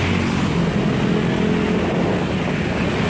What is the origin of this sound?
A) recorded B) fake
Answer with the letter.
A